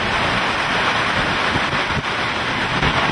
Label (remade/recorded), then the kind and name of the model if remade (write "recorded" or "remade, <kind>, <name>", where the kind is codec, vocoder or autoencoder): recorded